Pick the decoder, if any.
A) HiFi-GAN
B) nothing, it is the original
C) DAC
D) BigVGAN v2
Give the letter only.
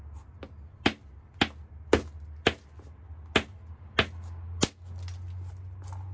B